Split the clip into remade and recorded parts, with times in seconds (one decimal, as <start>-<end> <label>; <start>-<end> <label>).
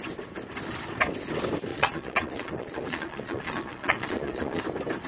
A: 0.0-1.7 recorded; 1.7-4.6 remade; 4.6-5.1 recorded